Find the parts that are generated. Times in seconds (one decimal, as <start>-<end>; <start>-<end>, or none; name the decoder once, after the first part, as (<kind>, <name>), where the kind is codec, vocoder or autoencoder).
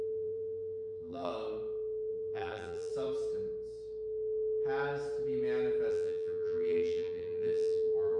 0.0-1.3 (vocoder, BigVGAN v2); 2.1-2.9; 5.9-8.2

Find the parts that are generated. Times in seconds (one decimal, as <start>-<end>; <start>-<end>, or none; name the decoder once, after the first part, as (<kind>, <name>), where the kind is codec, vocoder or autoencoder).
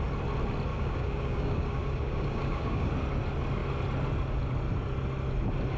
0.7-2.9 (codec, DAC)